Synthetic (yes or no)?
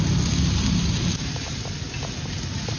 no